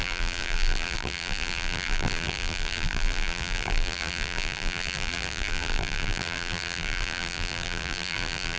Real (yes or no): no